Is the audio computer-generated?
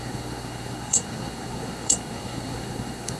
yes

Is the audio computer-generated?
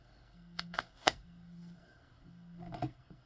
yes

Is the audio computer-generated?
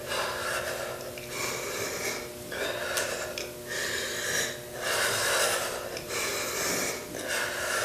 no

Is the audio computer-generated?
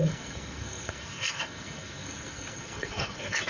yes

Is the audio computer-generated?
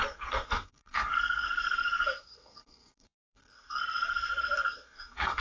yes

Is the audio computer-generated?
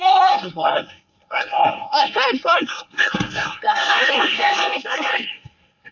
yes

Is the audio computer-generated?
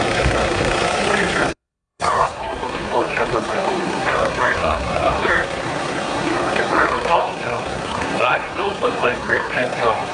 yes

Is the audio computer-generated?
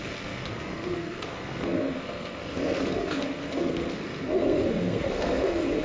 yes